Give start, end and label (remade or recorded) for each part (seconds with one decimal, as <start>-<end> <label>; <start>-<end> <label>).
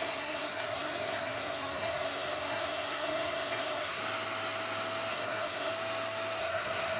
0.0-4.0 remade; 4.0-5.1 recorded; 5.1-5.7 remade; 5.7-6.4 recorded; 6.4-7.0 remade